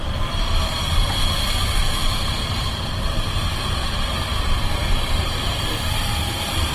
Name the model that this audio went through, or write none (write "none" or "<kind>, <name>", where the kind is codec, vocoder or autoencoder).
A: vocoder, BigVGAN v2